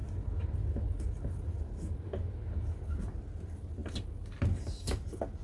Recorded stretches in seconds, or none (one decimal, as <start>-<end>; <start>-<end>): 0.0-5.4